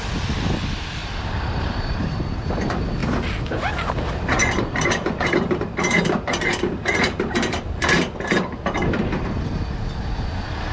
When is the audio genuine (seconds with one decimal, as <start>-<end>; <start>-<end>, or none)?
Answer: 0.0-1.0; 2.1-4.4; 6.9-10.7